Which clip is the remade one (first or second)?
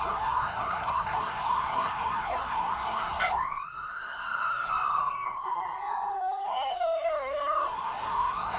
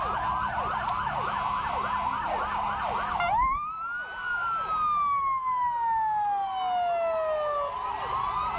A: first